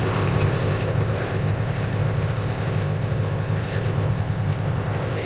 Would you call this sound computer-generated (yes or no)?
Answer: yes